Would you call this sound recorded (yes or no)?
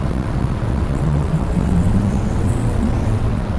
no